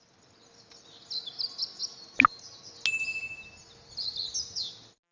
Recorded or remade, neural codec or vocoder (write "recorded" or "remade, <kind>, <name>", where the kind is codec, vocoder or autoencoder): recorded